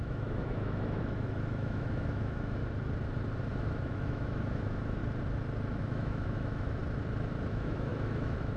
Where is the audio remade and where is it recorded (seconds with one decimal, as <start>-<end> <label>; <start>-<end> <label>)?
0.0-2.6 remade; 2.6-3.5 recorded; 3.5-5.0 remade; 5.0-5.8 recorded; 5.8-6.8 remade; 6.8-7.5 recorded; 7.5-8.6 remade